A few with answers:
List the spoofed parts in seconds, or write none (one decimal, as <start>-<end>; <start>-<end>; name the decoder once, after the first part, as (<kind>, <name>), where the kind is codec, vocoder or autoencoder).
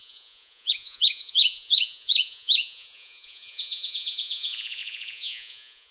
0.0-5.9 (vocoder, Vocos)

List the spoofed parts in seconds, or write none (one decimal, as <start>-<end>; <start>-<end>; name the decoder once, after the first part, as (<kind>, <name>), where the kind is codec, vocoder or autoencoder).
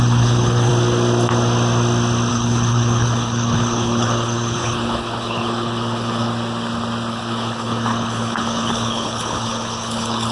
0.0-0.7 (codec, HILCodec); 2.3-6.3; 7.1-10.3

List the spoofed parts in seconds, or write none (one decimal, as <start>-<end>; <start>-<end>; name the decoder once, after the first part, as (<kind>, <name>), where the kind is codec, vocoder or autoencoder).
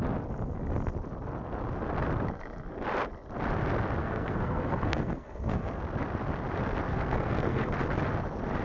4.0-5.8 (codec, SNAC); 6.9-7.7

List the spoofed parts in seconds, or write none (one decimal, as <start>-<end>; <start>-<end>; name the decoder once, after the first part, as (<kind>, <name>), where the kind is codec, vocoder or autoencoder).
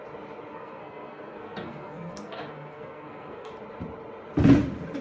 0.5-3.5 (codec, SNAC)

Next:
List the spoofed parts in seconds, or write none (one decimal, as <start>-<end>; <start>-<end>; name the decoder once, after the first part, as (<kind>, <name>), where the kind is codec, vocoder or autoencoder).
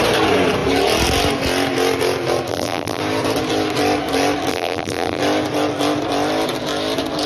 2.5-3.0 (vocoder, BigVGAN v2); 4.5-5.2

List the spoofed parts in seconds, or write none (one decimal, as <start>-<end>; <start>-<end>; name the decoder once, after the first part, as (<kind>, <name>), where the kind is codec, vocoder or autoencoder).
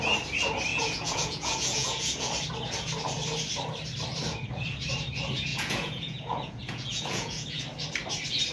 0.7-2.3 (vocoder, Vocos); 5.5-7.6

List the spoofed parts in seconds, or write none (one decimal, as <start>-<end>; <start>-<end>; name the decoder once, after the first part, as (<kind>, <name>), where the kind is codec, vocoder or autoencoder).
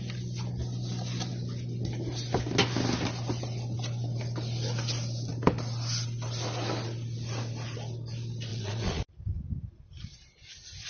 8.5-9.0 (vocoder, Vocos)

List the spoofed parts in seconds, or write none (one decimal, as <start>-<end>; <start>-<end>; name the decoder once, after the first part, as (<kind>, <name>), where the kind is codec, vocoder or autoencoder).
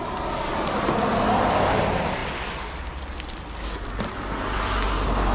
none